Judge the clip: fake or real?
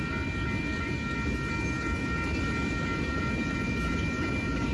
real